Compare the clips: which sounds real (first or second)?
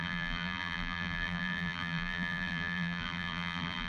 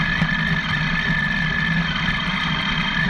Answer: second